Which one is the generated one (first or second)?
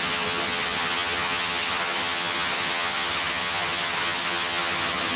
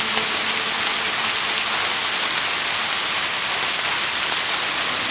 first